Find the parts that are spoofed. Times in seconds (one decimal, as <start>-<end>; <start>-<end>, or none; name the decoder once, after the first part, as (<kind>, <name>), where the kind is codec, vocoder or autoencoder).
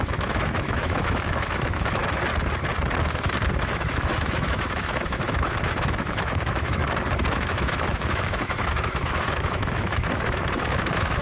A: 0.0-2.0 (autoencoder, DAC-VAE); 3.6-6.8; 7.3-11.2